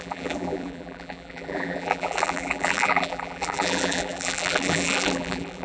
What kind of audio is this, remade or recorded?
remade